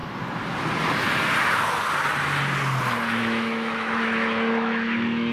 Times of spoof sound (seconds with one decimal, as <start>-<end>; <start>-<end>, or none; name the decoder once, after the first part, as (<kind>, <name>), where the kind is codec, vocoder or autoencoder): 3.2-5.3 (autoencoder, DAC-VAE)